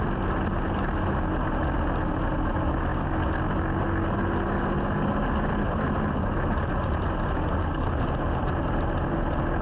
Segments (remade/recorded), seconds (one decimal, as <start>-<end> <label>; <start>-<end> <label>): 0.0-9.6 recorded